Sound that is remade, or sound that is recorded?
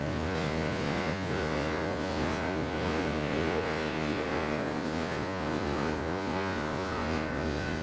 remade